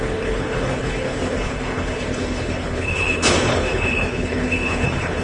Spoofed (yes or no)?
yes